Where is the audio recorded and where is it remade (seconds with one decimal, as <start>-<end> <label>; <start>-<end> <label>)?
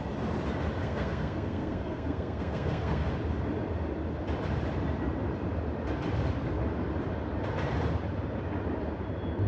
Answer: 0.0-0.8 recorded; 0.8-3.1 remade; 3.1-9.5 recorded